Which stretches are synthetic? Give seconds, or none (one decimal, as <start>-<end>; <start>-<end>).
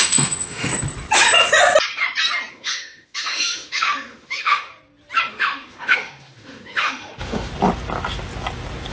0.0-0.7; 2.5-4.7; 5.3-7.5